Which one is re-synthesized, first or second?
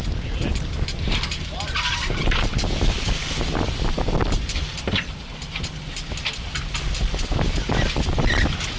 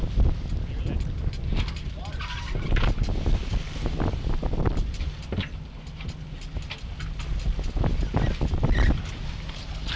first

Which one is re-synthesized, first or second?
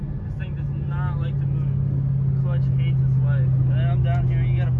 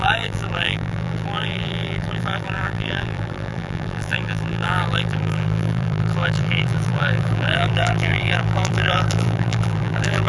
second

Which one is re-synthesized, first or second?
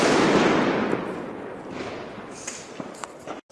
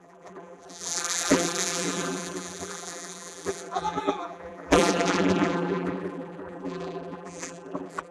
second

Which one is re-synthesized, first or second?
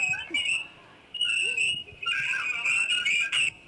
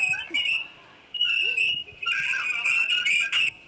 second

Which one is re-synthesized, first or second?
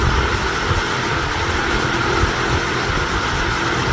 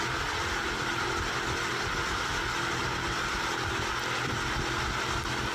first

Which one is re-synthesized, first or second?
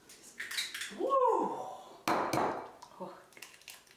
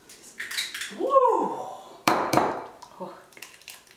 second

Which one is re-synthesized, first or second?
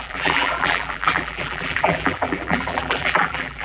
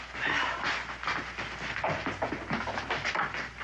first